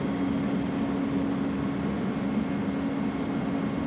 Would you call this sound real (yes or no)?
yes